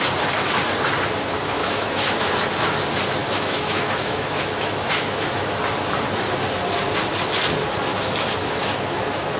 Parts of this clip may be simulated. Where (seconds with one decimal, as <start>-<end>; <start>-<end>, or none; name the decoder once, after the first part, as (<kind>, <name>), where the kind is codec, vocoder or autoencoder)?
1.6-2.3 (autoencoder, DAC-VAE); 3.2-5.6; 8.4-9.0